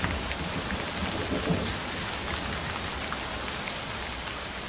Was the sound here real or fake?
real